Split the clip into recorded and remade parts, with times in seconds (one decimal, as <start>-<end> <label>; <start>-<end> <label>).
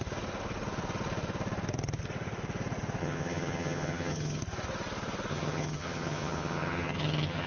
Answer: 0.0-3.0 recorded; 3.0-4.4 remade; 4.4-5.3 recorded; 5.3-7.5 remade